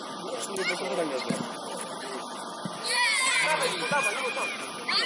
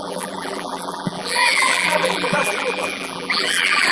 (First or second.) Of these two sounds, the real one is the first